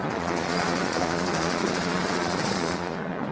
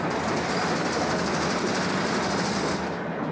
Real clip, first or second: second